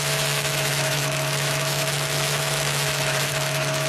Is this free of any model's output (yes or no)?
no